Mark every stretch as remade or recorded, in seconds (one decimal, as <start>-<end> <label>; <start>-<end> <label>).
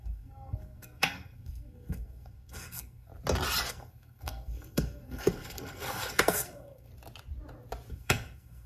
0.0-3.1 remade; 3.1-3.7 recorded; 3.7-6.9 remade; 6.9-7.9 recorded; 7.9-8.7 remade